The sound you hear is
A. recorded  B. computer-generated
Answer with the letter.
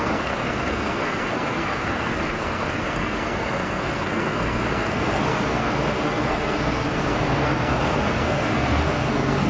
B